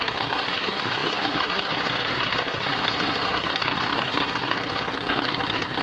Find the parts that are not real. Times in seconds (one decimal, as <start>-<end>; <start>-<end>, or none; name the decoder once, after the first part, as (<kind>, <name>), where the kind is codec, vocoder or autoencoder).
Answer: 0.0-5.8 (codec, SNAC)

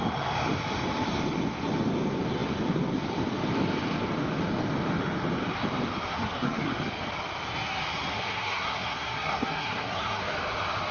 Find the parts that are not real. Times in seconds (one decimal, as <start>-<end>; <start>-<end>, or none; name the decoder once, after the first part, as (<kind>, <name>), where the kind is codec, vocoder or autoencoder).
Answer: 6.1-6.7 (codec, SNAC); 8.1-10.2

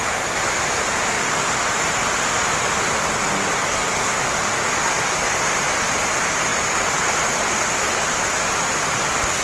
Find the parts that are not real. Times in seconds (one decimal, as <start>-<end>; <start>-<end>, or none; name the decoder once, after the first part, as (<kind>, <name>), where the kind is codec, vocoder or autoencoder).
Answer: 3.7-4.2 (codec, SNAC)

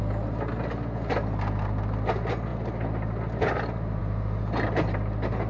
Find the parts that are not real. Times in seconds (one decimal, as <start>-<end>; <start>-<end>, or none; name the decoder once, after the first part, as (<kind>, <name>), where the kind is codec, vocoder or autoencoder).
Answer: none

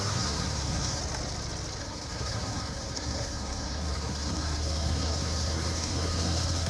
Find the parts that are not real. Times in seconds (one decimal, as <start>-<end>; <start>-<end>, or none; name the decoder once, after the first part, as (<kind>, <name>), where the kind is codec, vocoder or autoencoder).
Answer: 0.0-1.0 (codec, SNAC); 1.8-6.7

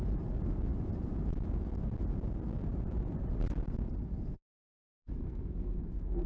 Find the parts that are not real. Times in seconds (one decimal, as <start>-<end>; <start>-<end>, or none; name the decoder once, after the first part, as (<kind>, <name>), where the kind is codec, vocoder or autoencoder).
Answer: 5.2-6.3 (codec, SNAC)